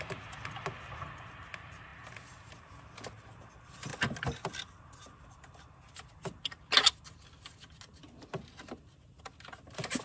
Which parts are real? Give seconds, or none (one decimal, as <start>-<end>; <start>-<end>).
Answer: 0.0-10.0